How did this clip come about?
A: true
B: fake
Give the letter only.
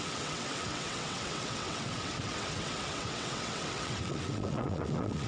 B